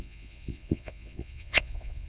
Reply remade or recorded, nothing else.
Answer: remade